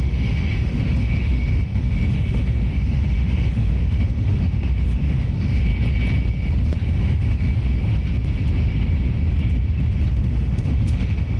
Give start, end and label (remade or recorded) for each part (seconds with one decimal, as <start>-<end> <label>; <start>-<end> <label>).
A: 0.0-5.7 remade; 5.7-6.9 recorded; 6.9-7.5 remade; 7.5-10.1 recorded; 10.1-11.4 remade